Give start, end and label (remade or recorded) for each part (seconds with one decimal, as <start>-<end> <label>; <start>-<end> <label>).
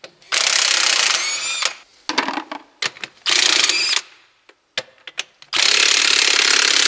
0.0-6.9 recorded